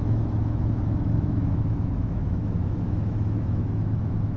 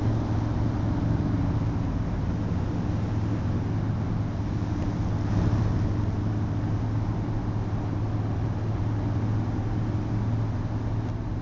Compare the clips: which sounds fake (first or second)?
first